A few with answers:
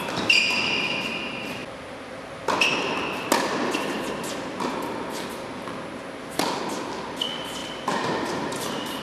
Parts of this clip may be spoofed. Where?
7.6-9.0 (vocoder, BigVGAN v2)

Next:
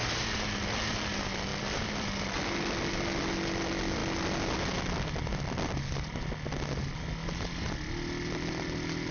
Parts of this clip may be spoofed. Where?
1.5-2.4 (vocoder, BigVGAN v2)

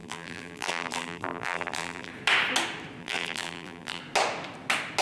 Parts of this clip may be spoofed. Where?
0.0-2.1 (vocoder, BigVGAN v2); 3.0-4.0